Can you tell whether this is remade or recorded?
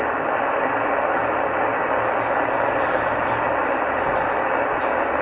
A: recorded